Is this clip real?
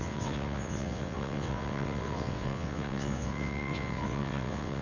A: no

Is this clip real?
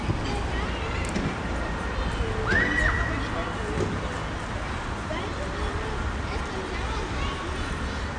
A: yes